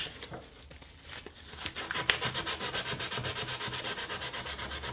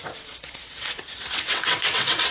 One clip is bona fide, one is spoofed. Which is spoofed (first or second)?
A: second